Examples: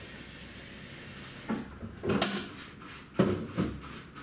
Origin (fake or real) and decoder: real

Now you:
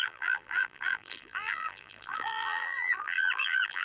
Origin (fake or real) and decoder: fake, vocoder, BigVGAN v2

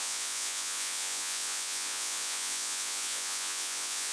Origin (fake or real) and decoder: fake, vocoder, Vocos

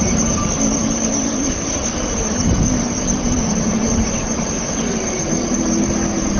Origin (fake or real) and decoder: fake, vocoder, BigVGAN v2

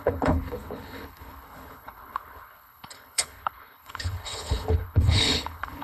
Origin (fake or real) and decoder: fake, codec, HILCodec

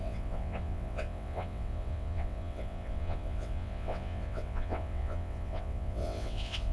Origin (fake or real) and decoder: fake, vocoder, WaveNeXt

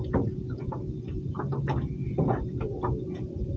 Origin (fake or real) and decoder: real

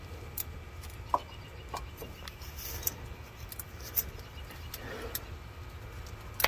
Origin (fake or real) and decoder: real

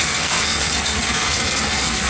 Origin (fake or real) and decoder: fake, codec, SNAC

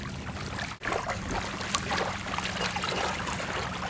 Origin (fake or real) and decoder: real